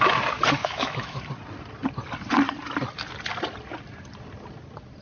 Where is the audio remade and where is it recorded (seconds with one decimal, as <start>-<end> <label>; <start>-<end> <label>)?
0.0-0.6 recorded; 0.6-1.2 remade; 1.2-5.0 recorded